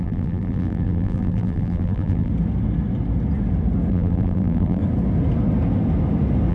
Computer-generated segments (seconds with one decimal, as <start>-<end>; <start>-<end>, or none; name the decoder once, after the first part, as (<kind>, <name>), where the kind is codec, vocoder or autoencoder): 0.0-2.3 (vocoder, BigVGAN v2); 3.9-4.8